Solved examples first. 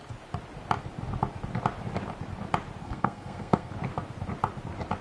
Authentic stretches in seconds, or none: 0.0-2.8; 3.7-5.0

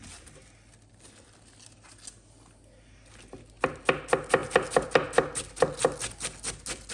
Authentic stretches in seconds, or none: 0.0-6.9

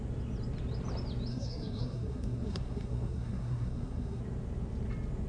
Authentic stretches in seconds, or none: 0.0-1.3; 4.2-5.3

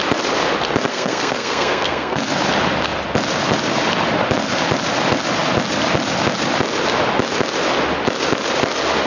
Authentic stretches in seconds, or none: 0.0-0.9; 2.2-9.1

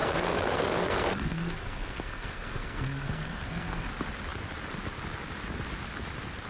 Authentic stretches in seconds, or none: 3.9-6.5